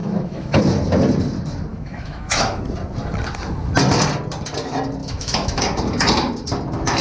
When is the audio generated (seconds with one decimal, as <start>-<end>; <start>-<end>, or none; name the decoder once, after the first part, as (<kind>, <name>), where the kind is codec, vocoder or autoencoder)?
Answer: 0.0-0.6 (autoencoder, DAC-VAE); 1.7-2.6; 5.0-5.6

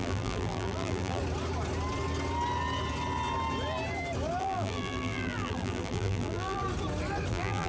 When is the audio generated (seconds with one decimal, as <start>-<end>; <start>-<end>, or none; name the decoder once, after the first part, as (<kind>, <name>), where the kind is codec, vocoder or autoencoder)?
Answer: 0.0-1.2 (vocoder, BigVGAN v2); 4.4-6.6; 7.3-7.7

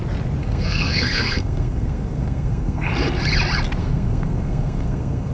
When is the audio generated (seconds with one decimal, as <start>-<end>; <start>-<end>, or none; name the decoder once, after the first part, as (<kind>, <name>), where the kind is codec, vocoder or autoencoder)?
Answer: 0.4-2.9 (codec, SNAC); 3.8-5.3

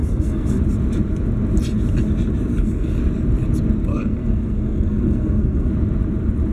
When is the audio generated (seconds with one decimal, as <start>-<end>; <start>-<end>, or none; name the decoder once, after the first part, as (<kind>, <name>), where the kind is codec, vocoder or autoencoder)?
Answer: 0.0-0.6 (codec, SNAC); 2.5-3.0; 3.9-5.7